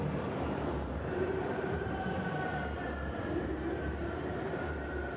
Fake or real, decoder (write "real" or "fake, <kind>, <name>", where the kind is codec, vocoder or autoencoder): fake, vocoder, BigVGAN v2